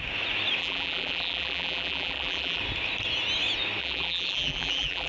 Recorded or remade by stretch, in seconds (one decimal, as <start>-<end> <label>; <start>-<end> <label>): 0.0-0.6 recorded; 0.6-2.6 remade; 2.6-3.8 recorded; 3.8-5.1 remade